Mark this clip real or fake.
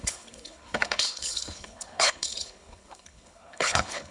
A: fake